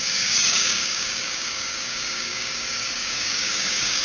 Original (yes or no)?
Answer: no